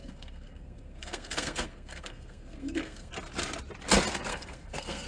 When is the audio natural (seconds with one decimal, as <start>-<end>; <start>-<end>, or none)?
3.1-4.3